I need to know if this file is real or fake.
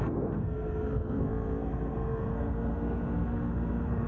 fake